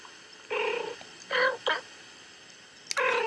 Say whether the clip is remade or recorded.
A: recorded